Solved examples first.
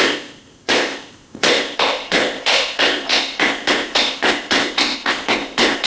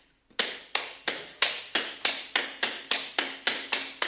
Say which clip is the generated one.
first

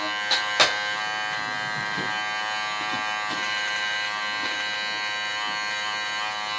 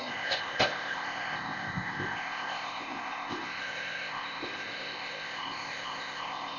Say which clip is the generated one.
second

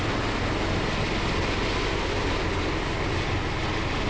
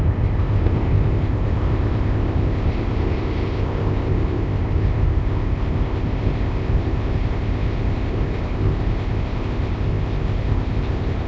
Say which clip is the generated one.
second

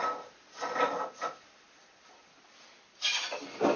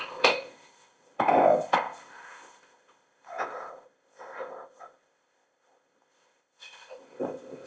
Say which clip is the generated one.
second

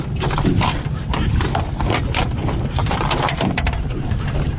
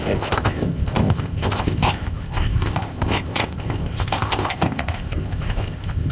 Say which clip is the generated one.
second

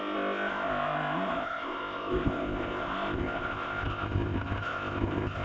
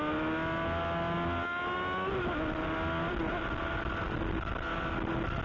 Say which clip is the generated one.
first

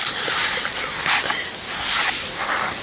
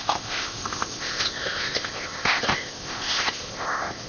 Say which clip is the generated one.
second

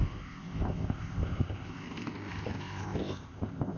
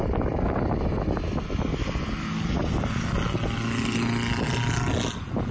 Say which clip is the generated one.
first